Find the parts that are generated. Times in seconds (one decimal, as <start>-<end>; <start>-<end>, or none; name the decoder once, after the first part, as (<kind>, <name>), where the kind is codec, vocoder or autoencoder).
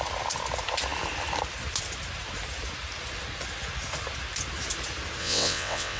5.2-6.0 (vocoder, WaveNeXt)